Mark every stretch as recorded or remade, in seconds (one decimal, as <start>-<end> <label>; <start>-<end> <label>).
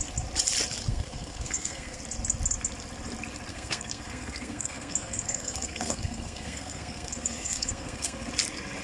0.0-0.9 recorded; 0.9-2.0 remade; 2.0-3.5 recorded; 3.5-8.3 remade; 8.3-8.8 recorded